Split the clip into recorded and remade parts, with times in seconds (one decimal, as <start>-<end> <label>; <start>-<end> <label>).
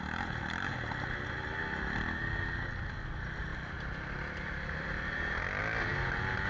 0.0-3.5 recorded; 3.5-5.6 remade; 5.6-6.5 recorded